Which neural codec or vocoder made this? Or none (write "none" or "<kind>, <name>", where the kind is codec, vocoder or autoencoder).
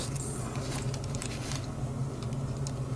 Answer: none